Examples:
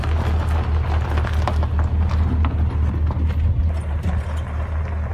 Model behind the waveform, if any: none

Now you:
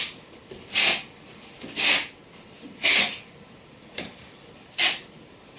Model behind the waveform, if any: none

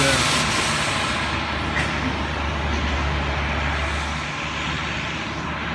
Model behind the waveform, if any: none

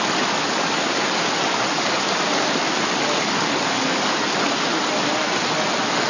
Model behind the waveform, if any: none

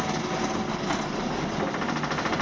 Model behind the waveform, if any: none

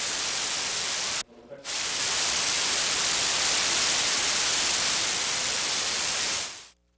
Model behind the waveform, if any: none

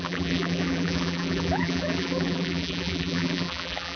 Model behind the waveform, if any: vocoder, BigVGAN v2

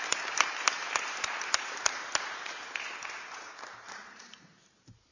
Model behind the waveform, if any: vocoder, BigVGAN v2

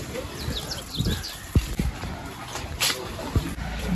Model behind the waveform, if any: vocoder, BigVGAN v2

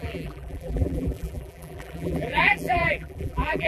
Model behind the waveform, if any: vocoder, BigVGAN v2